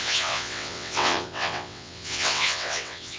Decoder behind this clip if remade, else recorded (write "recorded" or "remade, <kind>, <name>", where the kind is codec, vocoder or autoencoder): remade, vocoder, WaveNeXt